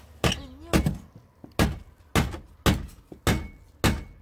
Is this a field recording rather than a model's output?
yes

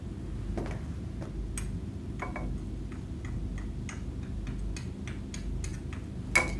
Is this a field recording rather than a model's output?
yes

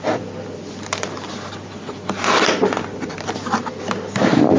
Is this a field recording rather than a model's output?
no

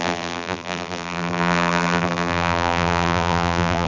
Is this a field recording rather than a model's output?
no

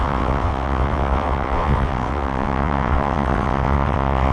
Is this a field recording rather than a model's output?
no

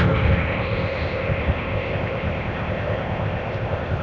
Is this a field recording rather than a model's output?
no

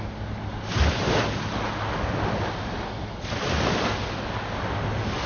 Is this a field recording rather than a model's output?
yes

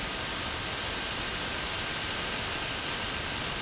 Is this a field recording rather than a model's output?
yes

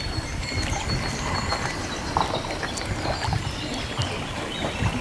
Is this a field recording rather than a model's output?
yes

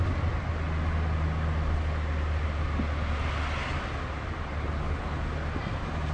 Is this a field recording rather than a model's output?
yes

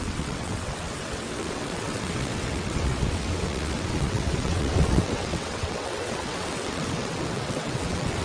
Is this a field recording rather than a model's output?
no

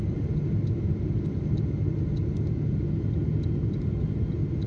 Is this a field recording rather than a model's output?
yes